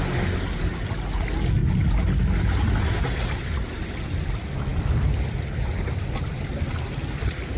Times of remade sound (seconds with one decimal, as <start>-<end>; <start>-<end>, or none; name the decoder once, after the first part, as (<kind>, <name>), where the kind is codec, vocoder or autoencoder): none